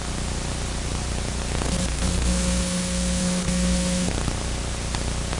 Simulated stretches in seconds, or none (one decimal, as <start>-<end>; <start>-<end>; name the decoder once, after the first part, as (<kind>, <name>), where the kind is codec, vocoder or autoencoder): 1.9-4.1 (codec, SNAC)

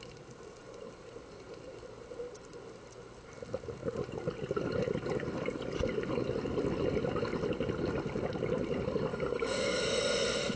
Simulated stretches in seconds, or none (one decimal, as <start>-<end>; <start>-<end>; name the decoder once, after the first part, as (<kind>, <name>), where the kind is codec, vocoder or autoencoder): 9.1-9.8 (codec, DAC)

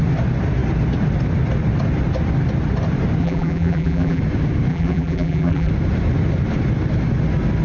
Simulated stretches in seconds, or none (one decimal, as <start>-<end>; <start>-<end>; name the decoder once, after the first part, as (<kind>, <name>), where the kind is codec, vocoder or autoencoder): 3.2-4.2 (vocoder, BigVGAN v2); 4.7-5.7

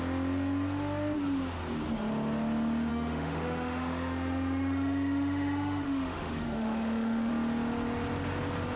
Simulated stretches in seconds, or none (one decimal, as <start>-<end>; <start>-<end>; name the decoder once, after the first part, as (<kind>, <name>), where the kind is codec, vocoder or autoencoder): 2.9-7.3 (autoencoder, DAC-VAE)